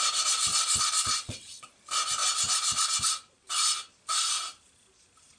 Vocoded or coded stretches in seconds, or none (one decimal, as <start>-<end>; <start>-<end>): 0.5-1.7